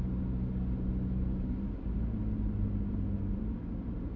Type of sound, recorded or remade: recorded